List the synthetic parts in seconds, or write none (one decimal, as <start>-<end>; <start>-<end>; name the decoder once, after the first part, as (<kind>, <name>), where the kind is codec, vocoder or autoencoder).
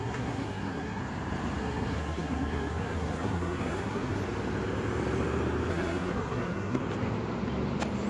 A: 0.0-1.0 (codec, SNAC); 1.6-4.2; 5.7-6.8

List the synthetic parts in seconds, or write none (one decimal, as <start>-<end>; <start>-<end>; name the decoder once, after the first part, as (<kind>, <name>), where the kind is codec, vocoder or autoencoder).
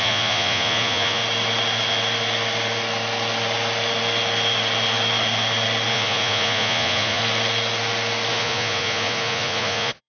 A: 0.0-1.2 (vocoder, Vocos); 5.9-7.2; 8.3-10.1